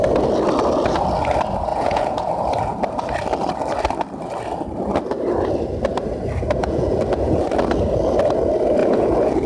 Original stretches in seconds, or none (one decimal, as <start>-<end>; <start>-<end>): 0.0-1.7; 2.3-6.6; 7.4-8.8

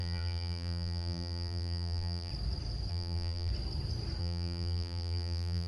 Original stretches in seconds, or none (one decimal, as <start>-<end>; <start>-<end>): 2.3-2.9; 3.5-4.2

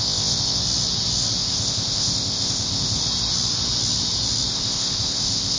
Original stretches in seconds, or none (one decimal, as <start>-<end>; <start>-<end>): 0.6-1.4; 3.0-4.5

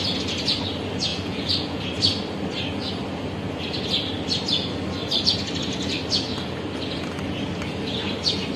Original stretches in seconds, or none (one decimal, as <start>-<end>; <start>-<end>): 0.0-1.1; 1.8-8.6

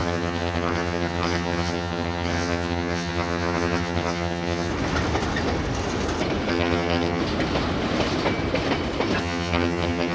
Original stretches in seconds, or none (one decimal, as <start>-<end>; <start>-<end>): 4.7-6.5; 7.2-9.2